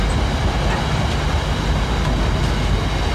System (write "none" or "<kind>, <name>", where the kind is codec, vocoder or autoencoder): none